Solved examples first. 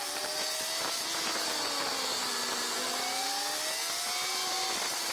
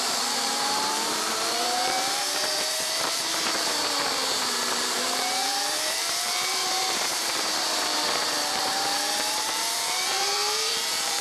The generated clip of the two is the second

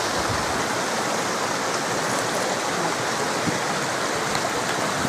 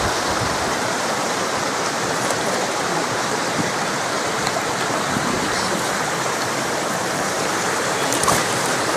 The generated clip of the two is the second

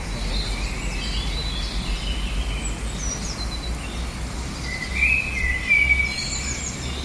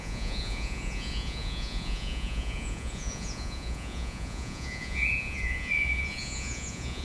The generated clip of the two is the second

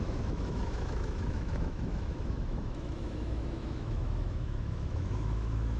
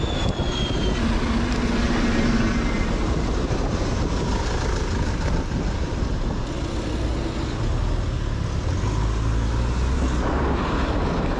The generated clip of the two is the first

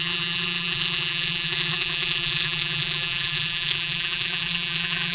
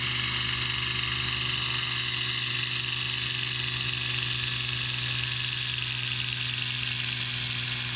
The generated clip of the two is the first